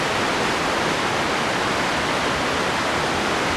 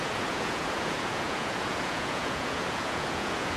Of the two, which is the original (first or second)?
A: first